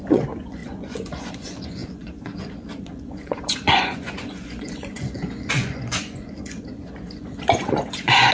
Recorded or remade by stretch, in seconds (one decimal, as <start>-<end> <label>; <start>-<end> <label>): 0.0-8.3 remade